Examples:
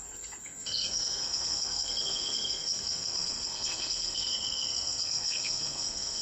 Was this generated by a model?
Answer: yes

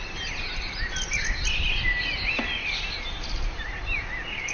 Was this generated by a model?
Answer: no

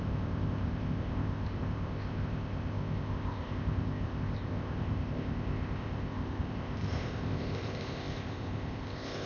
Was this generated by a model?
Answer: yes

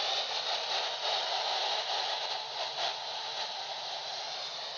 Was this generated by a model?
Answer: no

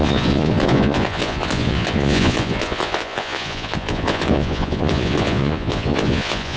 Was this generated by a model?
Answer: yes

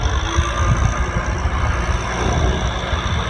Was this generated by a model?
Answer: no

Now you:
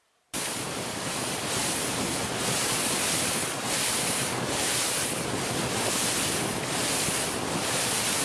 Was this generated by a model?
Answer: yes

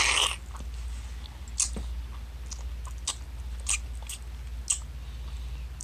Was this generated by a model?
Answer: no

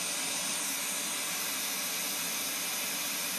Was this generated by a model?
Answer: no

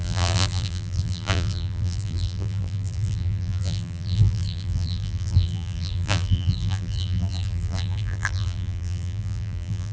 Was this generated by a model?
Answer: yes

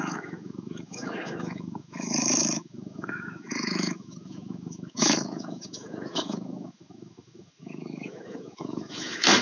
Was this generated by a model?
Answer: yes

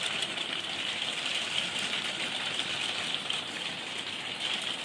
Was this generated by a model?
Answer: no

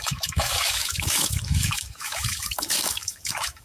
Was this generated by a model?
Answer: yes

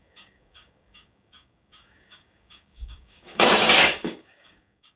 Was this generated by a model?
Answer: yes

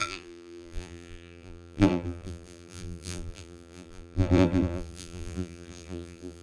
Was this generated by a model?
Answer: yes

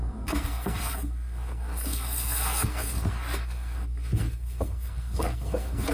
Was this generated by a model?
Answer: yes